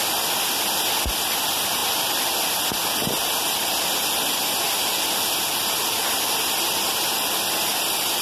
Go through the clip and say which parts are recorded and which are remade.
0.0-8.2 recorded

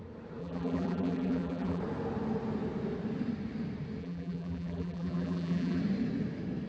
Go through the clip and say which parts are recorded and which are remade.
0.0-0.4 recorded; 0.4-1.8 remade; 1.8-4.0 recorded; 4.0-5.8 remade; 5.8-6.7 recorded